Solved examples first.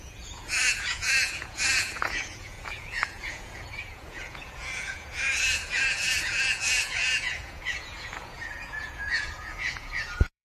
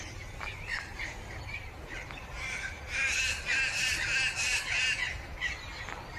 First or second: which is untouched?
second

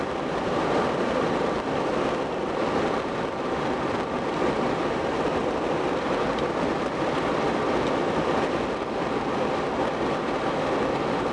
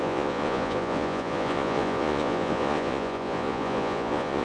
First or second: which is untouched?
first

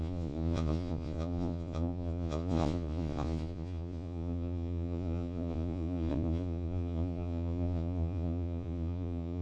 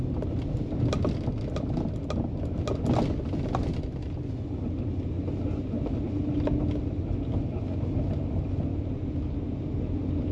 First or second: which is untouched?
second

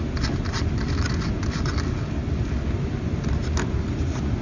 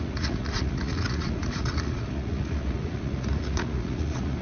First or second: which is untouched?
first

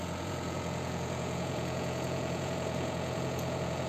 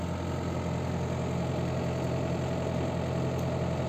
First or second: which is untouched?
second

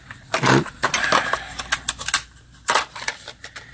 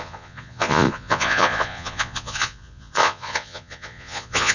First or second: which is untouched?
first